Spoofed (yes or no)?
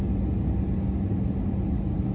no